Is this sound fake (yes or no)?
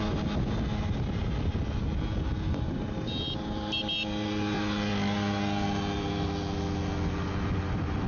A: no